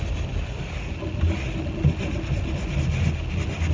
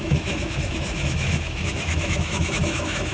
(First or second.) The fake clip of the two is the second